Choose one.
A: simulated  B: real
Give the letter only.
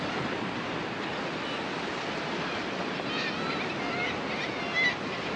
B